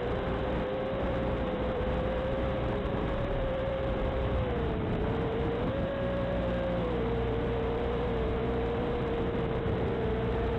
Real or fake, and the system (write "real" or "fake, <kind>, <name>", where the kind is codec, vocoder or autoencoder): fake, vocoder, BigVGAN v2